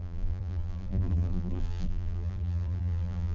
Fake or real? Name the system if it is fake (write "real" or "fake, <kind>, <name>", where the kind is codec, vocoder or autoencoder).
fake, vocoder, BigVGAN v2